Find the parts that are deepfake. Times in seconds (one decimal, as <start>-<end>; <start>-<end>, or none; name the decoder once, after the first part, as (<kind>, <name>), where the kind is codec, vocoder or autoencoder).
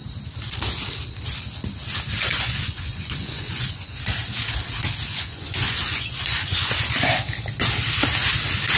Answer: 2.3-4.0 (vocoder, Vocos); 5.1-6.7